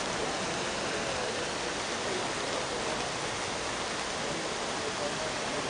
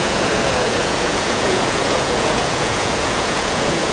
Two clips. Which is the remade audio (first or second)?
second